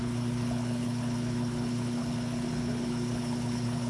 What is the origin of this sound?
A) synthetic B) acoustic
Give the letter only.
A